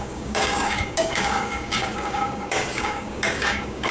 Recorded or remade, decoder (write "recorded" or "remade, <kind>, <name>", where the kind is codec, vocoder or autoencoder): remade, codec, DAC